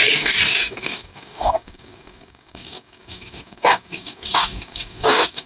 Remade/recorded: remade